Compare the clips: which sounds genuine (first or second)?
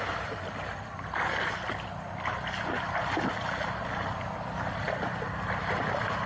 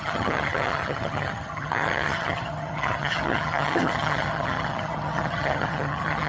first